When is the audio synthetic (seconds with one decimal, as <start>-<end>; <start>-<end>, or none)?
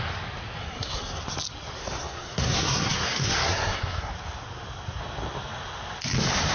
0.6-1.2; 1.8-4.1